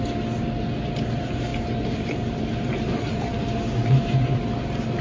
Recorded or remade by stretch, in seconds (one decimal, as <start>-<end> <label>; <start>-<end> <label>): 0.0-1.5 recorded; 1.5-4.5 remade; 4.5-5.0 recorded